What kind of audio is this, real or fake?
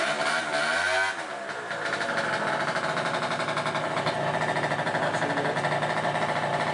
real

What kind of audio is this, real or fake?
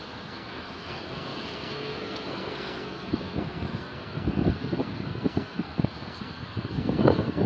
fake